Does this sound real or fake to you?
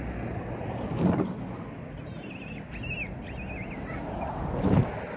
real